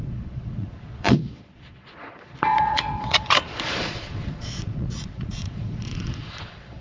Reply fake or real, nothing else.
fake